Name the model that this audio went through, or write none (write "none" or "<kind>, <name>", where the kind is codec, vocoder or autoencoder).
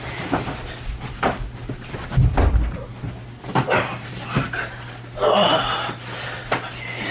none